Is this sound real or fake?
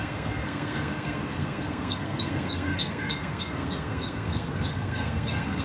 fake